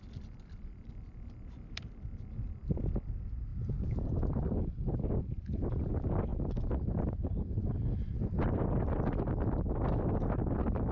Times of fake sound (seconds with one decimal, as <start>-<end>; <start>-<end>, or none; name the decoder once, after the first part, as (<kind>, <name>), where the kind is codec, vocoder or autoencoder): none